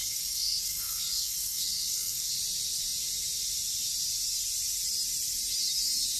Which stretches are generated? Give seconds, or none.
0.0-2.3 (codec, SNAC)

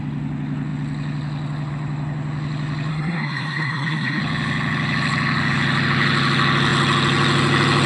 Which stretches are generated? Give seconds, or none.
2.9-4.2 (codec, SNAC)

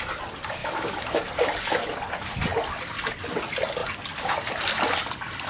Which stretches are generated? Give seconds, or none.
0.6-1.3 (autoencoder, DAC-VAE)